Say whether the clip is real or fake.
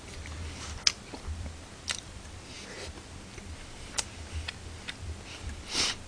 real